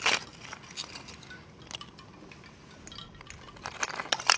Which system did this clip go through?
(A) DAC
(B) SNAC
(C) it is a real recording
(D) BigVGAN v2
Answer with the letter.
C